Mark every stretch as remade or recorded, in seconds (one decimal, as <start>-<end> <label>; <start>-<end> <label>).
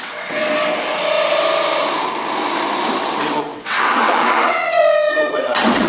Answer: 0.0-0.4 remade; 0.4-3.0 recorded; 3.0-5.9 remade